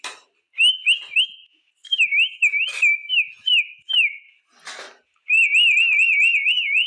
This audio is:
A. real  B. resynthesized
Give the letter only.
A